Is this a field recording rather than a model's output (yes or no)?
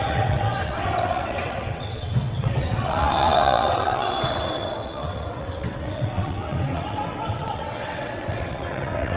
no